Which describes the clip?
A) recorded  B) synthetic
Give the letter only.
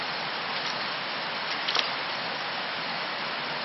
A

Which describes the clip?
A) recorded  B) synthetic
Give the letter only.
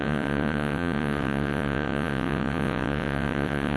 B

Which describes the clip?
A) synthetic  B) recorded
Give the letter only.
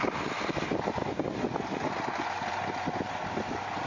B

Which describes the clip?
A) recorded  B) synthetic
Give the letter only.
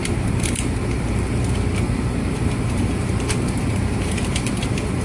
B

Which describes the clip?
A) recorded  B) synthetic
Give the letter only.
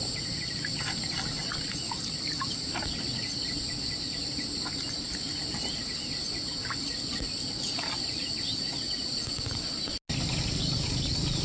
A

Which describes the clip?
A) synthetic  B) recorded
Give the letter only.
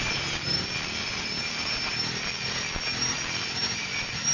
A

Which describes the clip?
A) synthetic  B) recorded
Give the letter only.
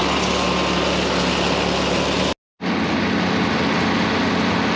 B